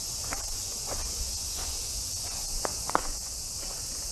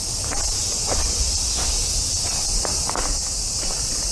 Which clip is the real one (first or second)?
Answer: second